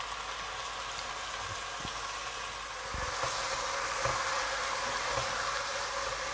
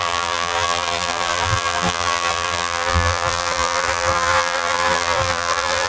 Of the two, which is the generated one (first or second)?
second